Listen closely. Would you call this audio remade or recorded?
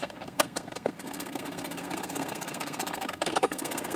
remade